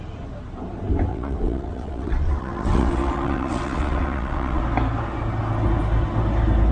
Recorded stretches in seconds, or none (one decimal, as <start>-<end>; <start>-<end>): 0.0-1.1; 4.6-6.7